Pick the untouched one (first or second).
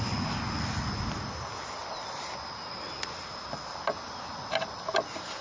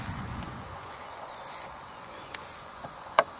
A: first